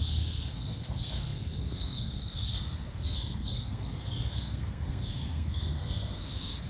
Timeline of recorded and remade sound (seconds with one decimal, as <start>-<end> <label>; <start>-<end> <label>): 0.0-6.7 remade